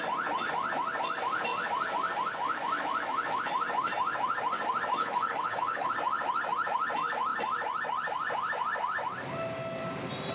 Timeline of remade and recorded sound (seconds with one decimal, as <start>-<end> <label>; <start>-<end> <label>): 0.0-5.0 recorded; 5.0-5.9 remade; 5.9-10.3 recorded